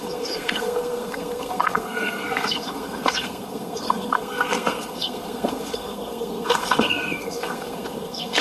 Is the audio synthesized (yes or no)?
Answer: yes